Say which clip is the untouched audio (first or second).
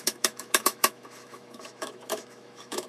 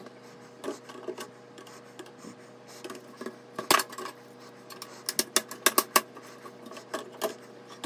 second